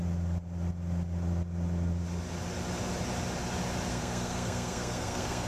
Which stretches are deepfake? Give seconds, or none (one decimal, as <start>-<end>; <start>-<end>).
3.9-5.5